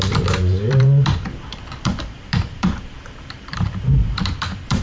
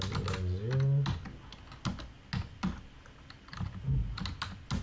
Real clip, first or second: second